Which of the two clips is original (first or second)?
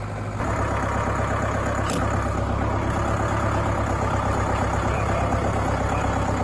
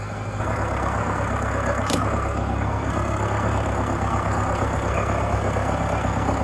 first